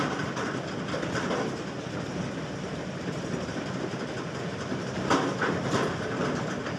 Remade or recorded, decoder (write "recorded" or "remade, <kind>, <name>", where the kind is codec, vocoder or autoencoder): recorded